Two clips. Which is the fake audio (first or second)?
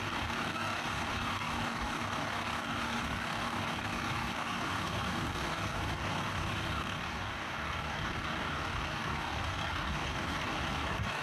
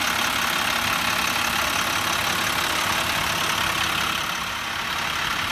first